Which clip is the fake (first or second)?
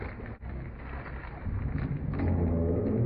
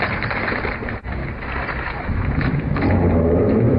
second